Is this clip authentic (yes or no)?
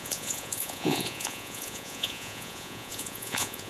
no